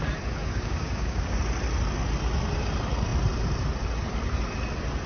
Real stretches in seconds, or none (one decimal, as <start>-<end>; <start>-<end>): 0.0-0.4; 1.4-5.1